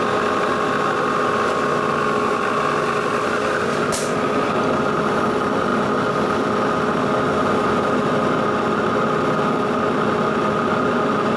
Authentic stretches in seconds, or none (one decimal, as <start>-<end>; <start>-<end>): 0.0-11.4